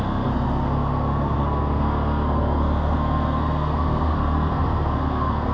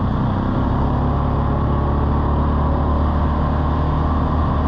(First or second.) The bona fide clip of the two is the second